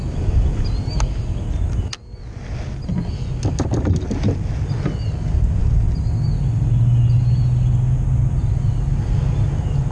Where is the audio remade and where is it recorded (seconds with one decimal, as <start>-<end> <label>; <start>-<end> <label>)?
0.0-9.9 recorded